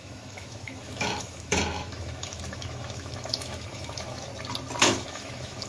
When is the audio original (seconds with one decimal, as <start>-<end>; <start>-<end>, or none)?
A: 4.3-4.8